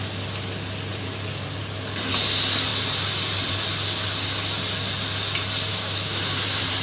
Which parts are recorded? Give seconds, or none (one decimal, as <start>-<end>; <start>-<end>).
0.0-5.7; 6.3-6.8